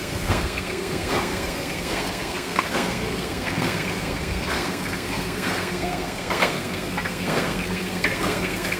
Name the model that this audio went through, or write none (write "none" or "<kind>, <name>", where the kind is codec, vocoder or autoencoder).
codec, SNAC